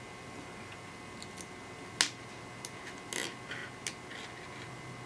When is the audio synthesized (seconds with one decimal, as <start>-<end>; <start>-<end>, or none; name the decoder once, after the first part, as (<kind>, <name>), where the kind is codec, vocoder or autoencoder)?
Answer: none